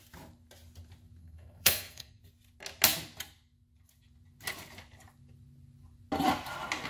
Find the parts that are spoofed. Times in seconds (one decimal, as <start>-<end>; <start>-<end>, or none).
1.2-2.2